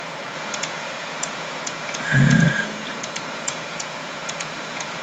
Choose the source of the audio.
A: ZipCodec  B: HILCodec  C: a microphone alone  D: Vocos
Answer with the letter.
D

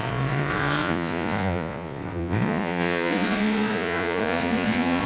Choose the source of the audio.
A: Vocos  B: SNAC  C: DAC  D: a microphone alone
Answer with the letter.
A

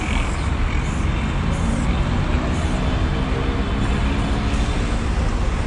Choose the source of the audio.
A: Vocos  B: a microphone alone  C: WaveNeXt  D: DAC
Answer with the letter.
B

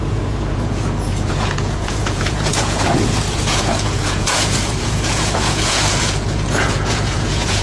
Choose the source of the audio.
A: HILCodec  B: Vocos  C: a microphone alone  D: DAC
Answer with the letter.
B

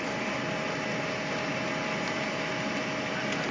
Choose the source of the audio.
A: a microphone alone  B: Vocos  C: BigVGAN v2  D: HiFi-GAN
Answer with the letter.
A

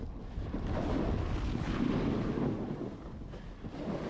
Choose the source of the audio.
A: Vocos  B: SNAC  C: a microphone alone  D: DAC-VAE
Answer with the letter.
C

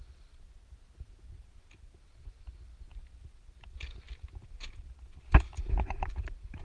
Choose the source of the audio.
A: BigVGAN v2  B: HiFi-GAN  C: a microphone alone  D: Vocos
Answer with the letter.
C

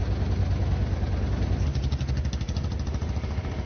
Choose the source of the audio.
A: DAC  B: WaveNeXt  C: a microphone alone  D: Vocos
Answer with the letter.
C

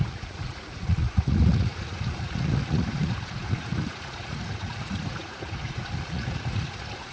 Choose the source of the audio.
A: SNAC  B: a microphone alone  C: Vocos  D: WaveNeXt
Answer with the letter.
C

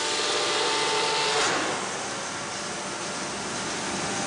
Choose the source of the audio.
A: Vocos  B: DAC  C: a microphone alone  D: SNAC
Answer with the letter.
C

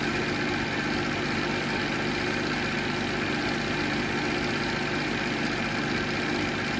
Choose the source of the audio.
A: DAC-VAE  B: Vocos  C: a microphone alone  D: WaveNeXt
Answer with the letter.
C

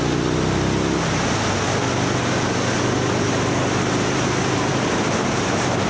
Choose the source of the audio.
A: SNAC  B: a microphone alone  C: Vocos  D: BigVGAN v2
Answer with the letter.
B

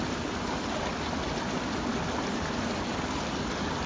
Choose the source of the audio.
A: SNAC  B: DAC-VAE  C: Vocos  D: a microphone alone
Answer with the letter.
D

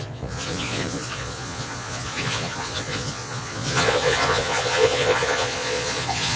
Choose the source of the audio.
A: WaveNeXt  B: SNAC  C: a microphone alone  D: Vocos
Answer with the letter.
D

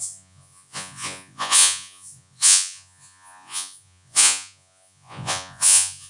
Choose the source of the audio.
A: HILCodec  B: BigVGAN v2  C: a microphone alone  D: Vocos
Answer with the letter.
D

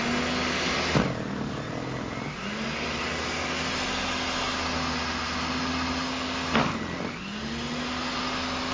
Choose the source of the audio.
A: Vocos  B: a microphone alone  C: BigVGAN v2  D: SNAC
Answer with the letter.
B